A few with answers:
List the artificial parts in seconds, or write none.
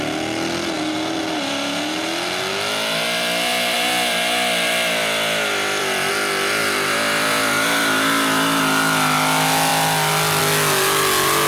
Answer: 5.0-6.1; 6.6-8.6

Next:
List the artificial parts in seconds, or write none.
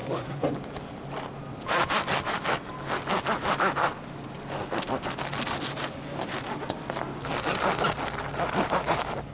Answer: 0.0-0.5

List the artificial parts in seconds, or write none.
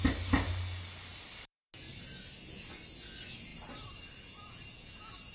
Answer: 1.1-1.7; 3.5-4.5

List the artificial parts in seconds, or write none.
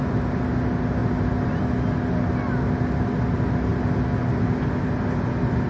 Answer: none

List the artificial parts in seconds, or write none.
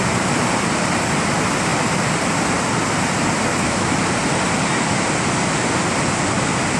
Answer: 3.5-4.0